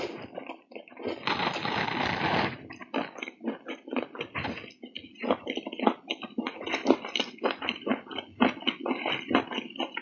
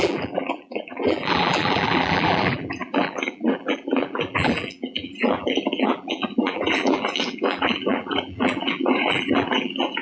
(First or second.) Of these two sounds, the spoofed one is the second